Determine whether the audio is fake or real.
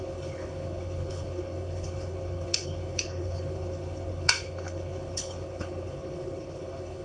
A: fake